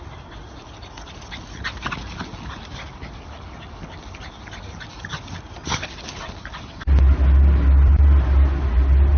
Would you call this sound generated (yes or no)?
no